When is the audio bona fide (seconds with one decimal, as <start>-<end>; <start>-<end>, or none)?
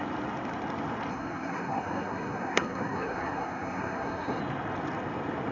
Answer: 0.0-1.1; 4.4-5.5